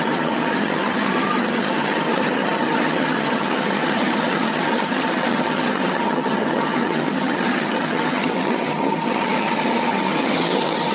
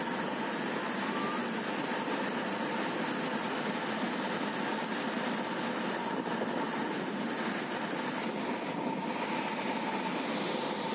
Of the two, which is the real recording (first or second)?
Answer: second